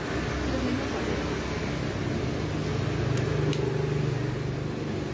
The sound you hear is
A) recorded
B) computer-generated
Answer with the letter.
A